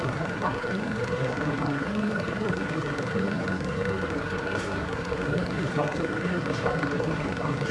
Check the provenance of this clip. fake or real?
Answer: fake